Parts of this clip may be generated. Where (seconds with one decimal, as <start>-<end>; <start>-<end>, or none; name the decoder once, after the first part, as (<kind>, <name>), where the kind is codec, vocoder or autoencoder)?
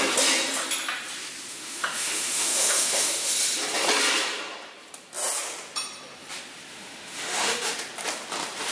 1.5-3.3 (autoencoder, DAC-VAE); 6.7-7.8